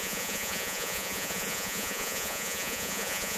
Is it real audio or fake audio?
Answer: fake